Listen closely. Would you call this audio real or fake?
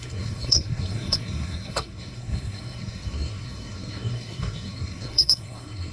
fake